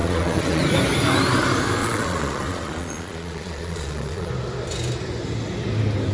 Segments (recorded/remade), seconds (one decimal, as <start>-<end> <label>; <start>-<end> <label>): 0.0-0.6 remade; 0.6-1.8 recorded; 1.8-4.3 remade; 4.3-6.1 recorded